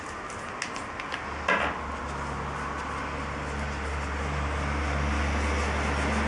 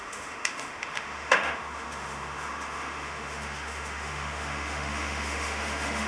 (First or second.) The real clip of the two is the first